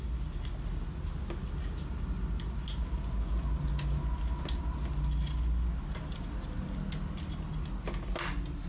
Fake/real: real